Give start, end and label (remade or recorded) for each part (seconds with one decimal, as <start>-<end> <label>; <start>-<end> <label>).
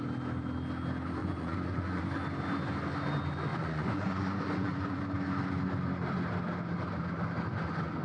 0.0-1.2 recorded; 1.2-2.0 remade; 2.0-3.5 recorded; 3.5-5.0 remade; 5.0-8.0 recorded